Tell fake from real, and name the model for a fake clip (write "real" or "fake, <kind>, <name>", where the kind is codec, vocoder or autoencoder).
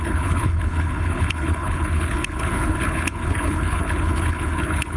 fake, codec, HILCodec